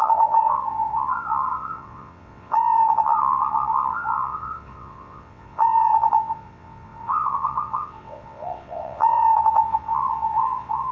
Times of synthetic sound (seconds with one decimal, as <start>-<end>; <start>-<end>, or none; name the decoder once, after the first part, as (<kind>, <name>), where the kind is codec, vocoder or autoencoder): 0.0-10.9 (vocoder, WaveNeXt)